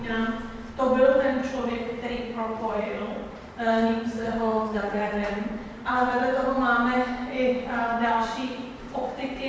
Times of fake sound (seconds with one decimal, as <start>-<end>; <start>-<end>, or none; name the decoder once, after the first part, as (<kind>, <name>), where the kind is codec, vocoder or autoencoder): 1.4-6.2 (vocoder, Vocos); 8.0-9.5